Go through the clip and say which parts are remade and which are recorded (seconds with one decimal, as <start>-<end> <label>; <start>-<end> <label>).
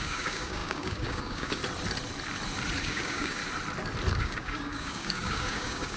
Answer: 0.0-1.6 remade; 1.6-2.8 recorded; 2.8-3.4 remade; 3.4-4.1 recorded; 4.1-6.0 remade